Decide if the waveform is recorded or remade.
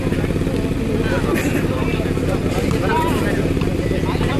recorded